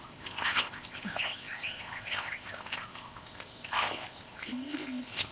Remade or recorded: remade